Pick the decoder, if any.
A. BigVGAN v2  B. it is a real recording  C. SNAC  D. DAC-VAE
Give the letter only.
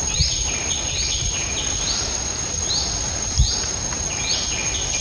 B